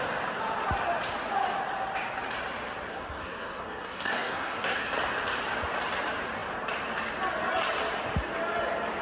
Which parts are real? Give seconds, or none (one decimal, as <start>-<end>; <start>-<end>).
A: 0.0-2.9; 4.8-9.0